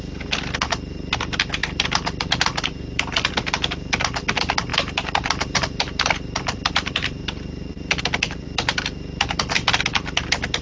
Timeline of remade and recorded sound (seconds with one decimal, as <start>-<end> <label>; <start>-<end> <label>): 0.0-1.6 recorded; 1.6-3.3 remade; 3.3-4.7 recorded; 4.7-8.0 remade; 8.0-10.6 recorded